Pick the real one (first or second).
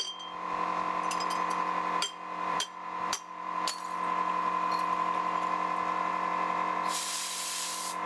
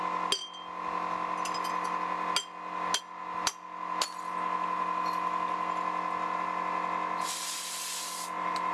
second